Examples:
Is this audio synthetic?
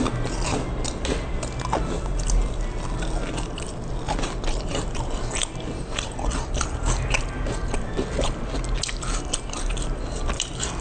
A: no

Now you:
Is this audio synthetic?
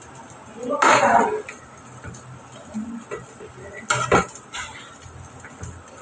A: no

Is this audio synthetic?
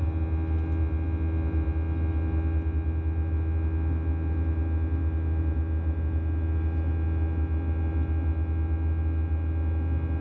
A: no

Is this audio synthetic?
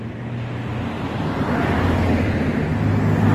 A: no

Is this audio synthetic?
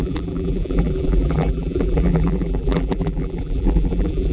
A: yes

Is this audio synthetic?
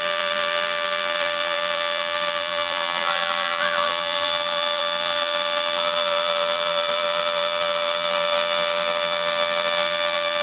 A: yes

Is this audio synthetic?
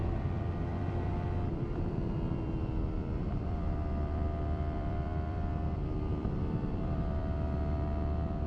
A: yes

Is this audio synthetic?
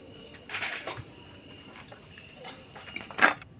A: yes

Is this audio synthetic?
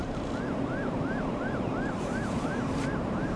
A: yes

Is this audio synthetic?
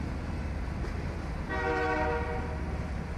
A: no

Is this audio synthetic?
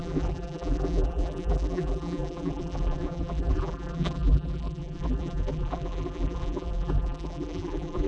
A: yes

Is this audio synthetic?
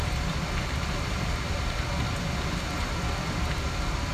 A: no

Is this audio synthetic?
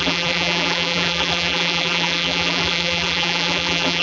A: yes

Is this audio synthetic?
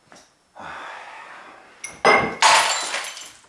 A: no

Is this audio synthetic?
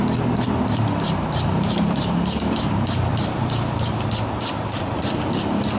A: yes